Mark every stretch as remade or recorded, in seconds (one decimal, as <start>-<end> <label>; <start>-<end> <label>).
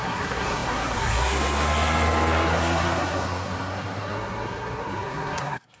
0.0-5.8 remade